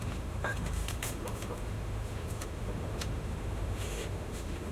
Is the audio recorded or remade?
remade